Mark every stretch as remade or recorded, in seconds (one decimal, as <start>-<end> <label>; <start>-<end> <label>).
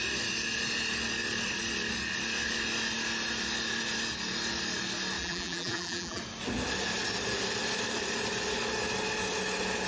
0.0-5.2 recorded; 5.2-6.2 remade; 6.2-9.9 recorded